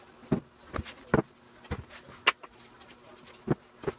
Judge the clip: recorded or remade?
recorded